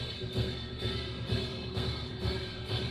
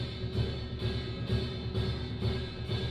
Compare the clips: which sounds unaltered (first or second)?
second